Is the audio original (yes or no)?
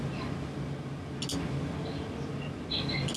yes